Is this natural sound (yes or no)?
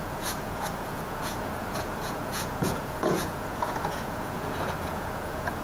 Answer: no